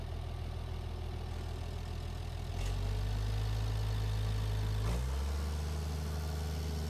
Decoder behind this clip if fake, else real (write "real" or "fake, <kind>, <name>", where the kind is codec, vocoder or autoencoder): real